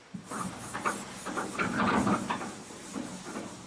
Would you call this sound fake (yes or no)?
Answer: yes